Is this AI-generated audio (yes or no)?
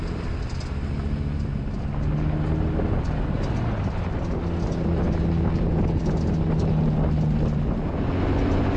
no